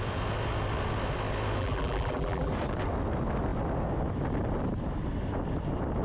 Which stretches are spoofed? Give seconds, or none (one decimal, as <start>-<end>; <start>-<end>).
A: 1.6-2.5